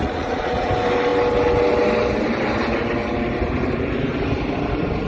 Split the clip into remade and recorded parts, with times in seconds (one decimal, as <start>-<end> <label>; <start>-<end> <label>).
0.0-0.7 remade; 0.7-5.1 recorded